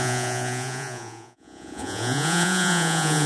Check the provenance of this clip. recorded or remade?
remade